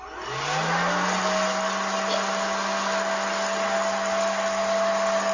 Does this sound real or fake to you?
real